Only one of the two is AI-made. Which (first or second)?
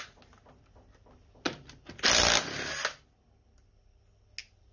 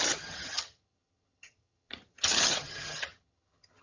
second